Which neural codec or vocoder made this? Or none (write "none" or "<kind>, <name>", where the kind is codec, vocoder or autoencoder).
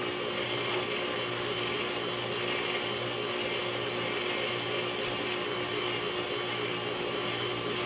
none